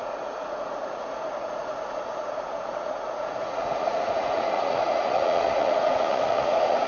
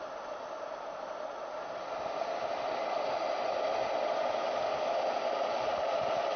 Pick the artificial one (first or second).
first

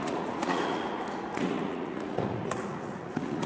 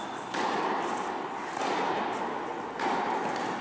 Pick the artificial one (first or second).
first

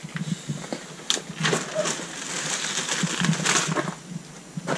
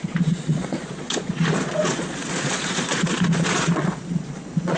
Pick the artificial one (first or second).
second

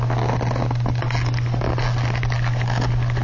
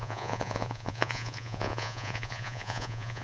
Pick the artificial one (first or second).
second